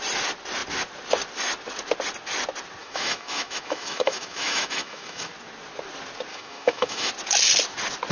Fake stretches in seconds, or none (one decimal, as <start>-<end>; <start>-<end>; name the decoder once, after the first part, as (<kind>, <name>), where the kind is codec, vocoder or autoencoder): 2.8-5.3 (autoencoder, DAC-VAE); 6.3-7.1